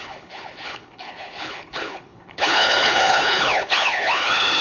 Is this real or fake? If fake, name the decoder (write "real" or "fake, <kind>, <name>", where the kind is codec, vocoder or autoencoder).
fake, codec, HILCodec